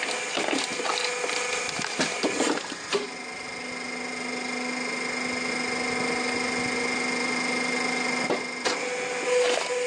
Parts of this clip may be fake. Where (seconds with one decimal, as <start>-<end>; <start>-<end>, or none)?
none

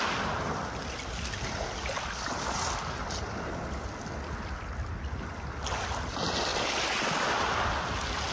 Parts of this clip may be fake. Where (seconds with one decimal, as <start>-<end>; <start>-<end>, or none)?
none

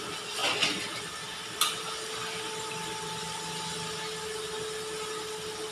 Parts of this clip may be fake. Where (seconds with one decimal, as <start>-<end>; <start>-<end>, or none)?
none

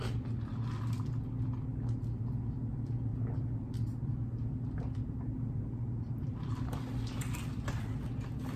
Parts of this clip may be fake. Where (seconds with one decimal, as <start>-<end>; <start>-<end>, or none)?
none

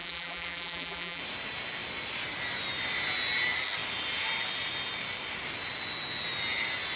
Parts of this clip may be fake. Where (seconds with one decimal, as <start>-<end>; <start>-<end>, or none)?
0.0-1.2

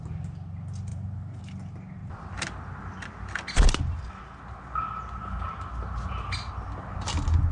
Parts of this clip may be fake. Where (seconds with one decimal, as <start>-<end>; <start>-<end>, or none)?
0.9-1.4